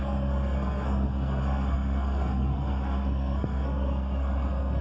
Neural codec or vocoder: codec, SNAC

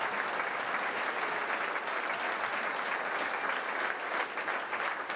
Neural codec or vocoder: none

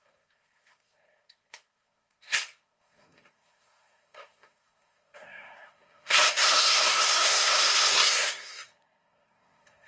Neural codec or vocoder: codec, SNAC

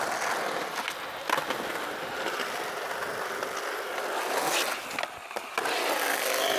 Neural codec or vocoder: none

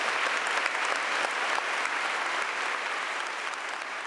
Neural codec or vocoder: none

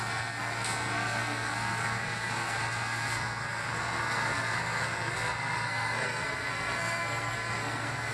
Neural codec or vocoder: codec, SNAC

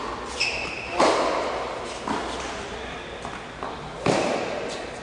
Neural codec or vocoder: none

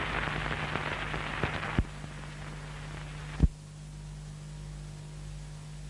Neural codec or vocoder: none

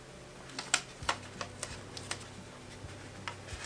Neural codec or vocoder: none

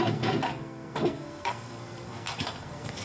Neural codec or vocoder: codec, SNAC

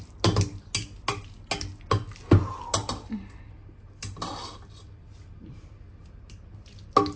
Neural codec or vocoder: none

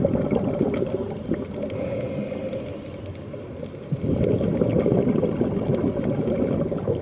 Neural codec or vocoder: none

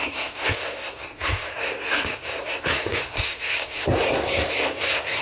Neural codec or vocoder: codec, SNAC